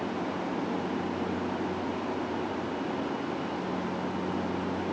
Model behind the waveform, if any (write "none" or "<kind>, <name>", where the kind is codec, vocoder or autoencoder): none